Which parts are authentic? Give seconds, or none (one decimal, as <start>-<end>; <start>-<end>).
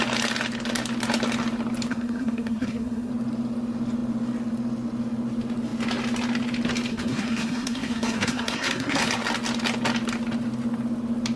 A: 0.0-1.9; 3.1-6.9; 9.1-11.4